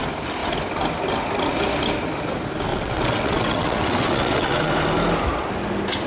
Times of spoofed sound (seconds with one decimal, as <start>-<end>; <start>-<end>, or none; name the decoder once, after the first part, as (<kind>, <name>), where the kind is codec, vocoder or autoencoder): 2.7-4.7 (vocoder, WaveNeXt)